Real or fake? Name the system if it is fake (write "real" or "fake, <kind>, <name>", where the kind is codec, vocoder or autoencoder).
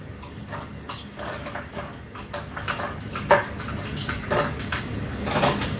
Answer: fake, codec, DAC